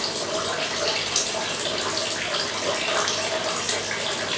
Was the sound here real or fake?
real